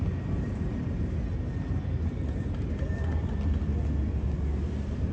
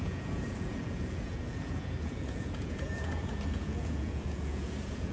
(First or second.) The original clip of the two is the first